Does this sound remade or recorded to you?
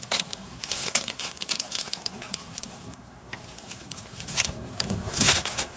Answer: remade